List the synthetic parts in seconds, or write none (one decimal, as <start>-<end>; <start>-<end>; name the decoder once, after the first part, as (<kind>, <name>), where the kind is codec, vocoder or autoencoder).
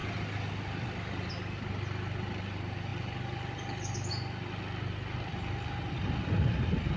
none